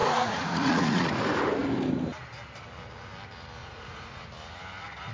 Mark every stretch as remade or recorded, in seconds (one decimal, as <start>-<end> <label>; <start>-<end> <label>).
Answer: 0.0-1.2 remade; 1.2-3.6 recorded; 3.6-4.2 remade; 4.2-5.1 recorded